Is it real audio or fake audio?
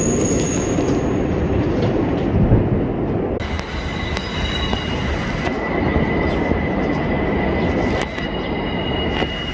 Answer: real